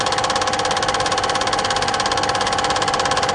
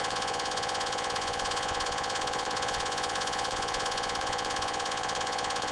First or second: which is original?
first